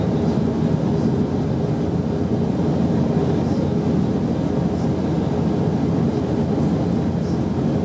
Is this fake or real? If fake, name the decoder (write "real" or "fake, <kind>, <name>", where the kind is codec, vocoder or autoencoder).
real